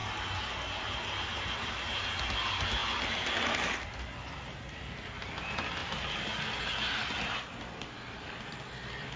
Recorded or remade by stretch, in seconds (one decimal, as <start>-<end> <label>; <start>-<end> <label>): 0.0-2.0 remade; 2.0-9.2 recorded